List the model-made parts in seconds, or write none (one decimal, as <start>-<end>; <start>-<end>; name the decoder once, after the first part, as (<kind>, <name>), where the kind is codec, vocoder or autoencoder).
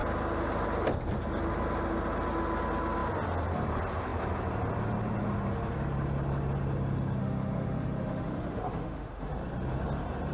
7.2-9.3 (autoencoder, DAC-VAE)